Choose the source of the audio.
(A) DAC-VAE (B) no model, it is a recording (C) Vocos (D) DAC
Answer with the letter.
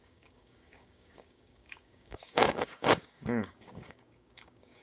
D